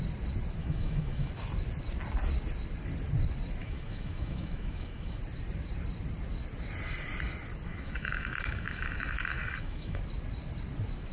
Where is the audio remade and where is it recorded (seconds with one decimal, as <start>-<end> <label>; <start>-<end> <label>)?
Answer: 0.0-0.6 recorded; 0.6-1.3 remade; 1.3-3.6 recorded; 3.6-5.2 remade; 5.2-7.7 recorded; 7.7-10.0 remade; 10.0-11.1 recorded